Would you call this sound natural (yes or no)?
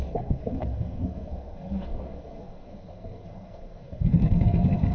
no